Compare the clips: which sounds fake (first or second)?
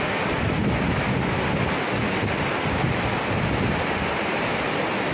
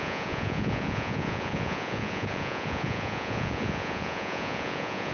second